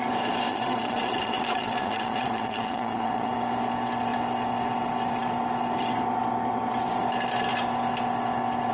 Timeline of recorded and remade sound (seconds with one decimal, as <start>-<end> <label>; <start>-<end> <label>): 0.0-0.5 recorded; 0.5-3.3 remade; 3.3-8.7 recorded